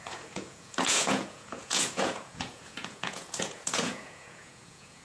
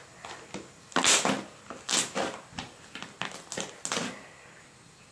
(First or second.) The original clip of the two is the second